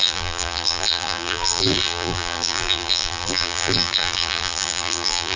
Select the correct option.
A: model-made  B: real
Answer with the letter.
A